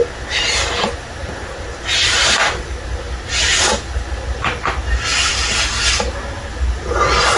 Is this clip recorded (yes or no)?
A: yes